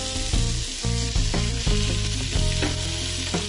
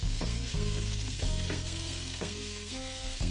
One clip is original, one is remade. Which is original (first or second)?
first